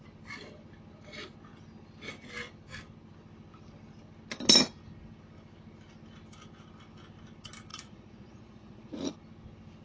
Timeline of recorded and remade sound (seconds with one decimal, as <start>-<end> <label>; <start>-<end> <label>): 0.0-7.7 recorded; 7.7-9.1 remade; 9.1-9.8 recorded